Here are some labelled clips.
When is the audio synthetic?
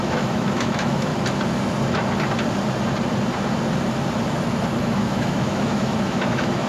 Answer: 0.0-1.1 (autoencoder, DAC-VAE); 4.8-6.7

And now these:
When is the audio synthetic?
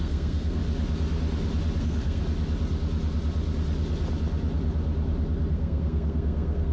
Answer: 0.0-0.6 (codec, SNAC); 1.8-2.2; 5.5-6.7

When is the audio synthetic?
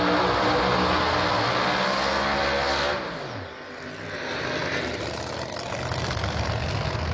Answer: none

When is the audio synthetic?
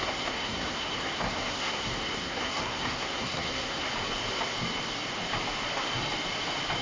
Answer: 0.0-3.9 (codec, SNAC)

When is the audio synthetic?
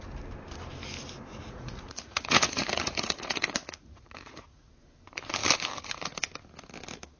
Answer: 1.3-4.7 (vocoder, Vocos)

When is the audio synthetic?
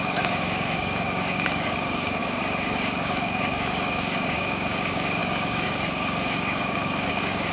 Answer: 0.0-7.5 (codec, DAC)